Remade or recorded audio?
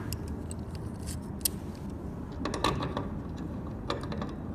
recorded